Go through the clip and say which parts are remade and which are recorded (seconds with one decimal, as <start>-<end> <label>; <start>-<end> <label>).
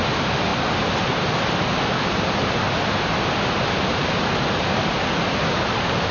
0.0-6.1 recorded